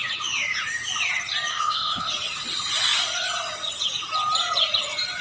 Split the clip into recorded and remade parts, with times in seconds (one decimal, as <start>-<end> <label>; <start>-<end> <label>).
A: 0.0-1.5 recorded; 1.5-2.1 remade; 2.1-5.2 recorded